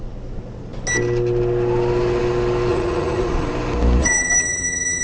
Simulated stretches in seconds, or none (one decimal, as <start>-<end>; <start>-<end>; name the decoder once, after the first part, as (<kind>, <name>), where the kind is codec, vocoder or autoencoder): 2.7-3.5 (vocoder, Vocos); 4.0-5.0